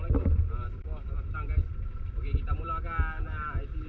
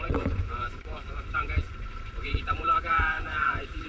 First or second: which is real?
first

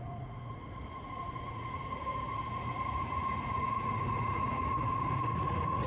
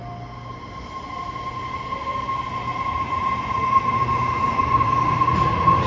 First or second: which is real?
second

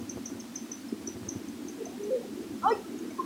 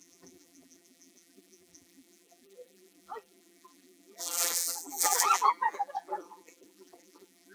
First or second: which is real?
first